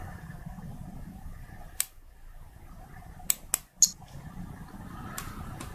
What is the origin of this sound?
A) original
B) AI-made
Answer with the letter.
A